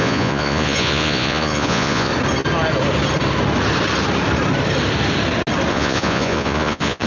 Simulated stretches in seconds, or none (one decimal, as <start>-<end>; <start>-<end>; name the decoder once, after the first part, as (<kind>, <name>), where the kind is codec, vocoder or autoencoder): 0.0-2.1 (vocoder, Vocos); 5.7-7.1